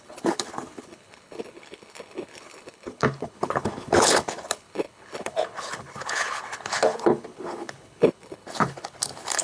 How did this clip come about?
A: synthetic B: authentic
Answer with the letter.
A